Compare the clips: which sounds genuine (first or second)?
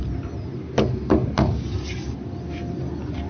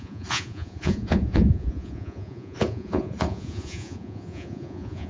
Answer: first